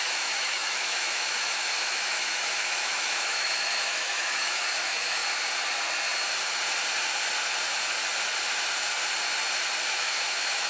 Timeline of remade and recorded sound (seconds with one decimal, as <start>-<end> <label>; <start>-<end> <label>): 0.0-5.2 remade; 5.2-9.9 recorded; 9.9-10.7 remade